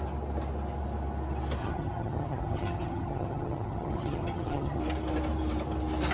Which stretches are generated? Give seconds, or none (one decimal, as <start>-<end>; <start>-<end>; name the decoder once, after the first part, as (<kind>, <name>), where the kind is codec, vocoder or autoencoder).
1.6-4.8 (vocoder, HiFi-GAN)